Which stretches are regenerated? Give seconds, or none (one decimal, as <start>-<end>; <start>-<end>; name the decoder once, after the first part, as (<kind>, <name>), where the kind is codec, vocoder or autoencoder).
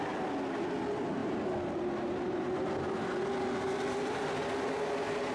none